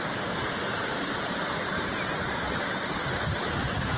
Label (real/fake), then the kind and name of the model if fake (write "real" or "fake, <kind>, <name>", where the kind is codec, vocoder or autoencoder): real